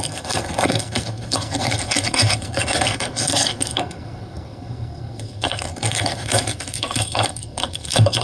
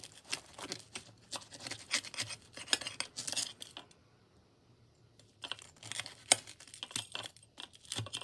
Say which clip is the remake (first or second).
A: first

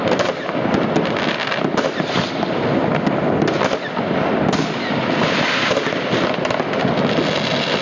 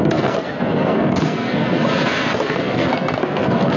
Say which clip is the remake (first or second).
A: second